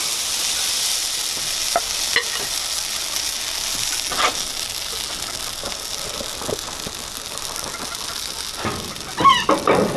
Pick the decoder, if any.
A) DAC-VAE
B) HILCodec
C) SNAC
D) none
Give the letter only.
D